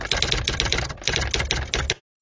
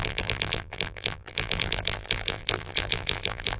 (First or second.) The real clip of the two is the first